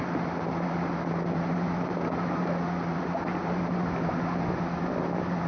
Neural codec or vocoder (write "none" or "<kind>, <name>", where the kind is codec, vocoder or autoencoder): none